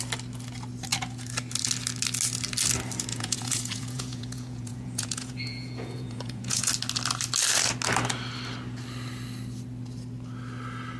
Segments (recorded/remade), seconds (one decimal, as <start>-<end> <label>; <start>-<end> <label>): 0.0-3.1 recorded; 3.1-6.7 remade; 6.7-11.0 recorded

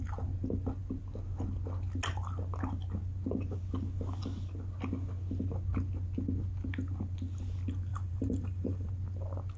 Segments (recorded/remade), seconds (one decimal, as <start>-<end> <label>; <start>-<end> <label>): 0.0-7.9 recorded; 7.9-8.9 remade; 8.9-9.6 recorded

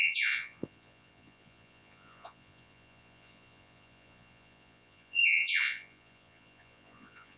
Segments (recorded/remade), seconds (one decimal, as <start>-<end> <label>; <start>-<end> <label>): 0.0-7.4 remade